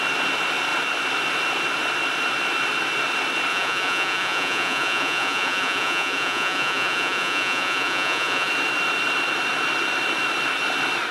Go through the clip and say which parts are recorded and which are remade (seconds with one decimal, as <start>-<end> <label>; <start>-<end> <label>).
0.0-3.5 recorded; 3.5-8.5 remade; 8.5-11.1 recorded